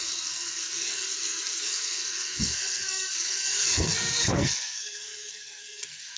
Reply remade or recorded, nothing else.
remade